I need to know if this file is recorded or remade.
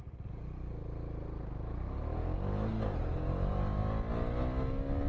recorded